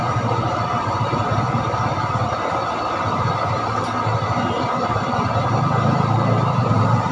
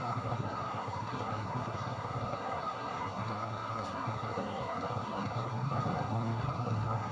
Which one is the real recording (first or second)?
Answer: first